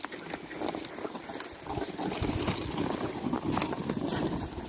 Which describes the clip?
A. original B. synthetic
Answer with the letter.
A